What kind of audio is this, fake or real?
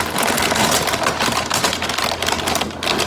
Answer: real